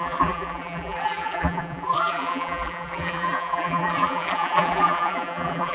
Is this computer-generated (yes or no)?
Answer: yes